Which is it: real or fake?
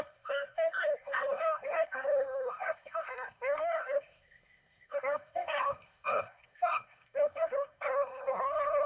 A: fake